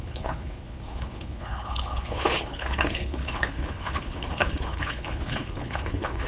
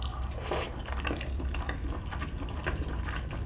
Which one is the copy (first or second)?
first